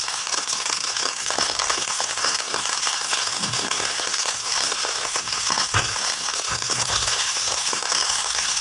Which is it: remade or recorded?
remade